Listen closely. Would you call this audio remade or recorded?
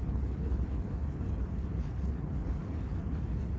remade